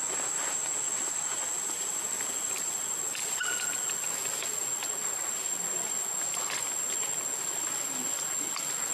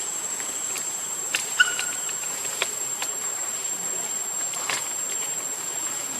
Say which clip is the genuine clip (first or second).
first